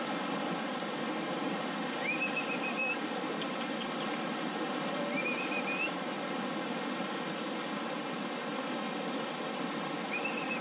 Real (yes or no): yes